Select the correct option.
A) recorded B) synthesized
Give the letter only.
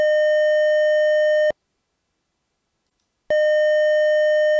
A